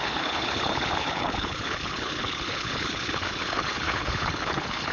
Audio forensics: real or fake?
fake